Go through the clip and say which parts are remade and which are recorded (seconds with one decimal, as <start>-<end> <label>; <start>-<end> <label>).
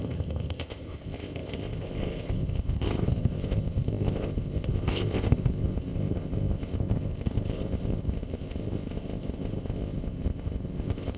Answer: 0.0-11.2 remade